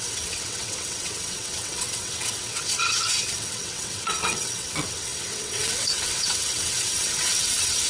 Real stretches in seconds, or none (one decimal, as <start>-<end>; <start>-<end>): none

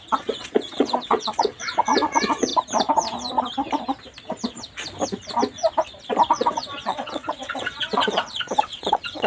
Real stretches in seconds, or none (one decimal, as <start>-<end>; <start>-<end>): 2.5-6.3

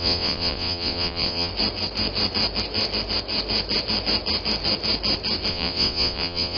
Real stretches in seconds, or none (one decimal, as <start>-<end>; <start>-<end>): 1.5-5.5

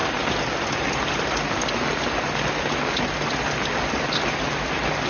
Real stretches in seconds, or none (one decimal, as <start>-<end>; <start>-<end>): 0.0-5.1